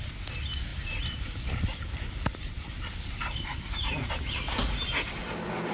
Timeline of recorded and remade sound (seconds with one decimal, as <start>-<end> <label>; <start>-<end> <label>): 0.0-0.7 recorded; 0.7-4.1 remade; 4.1-5.7 recorded